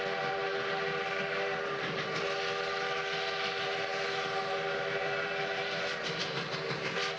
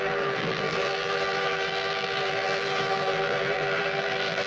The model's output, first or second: second